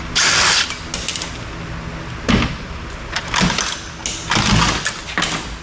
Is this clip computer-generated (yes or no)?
no